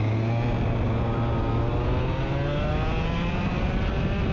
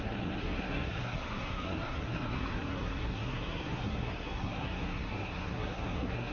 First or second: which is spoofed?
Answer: second